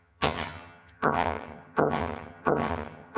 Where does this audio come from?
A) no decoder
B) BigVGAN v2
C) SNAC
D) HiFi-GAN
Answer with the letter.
D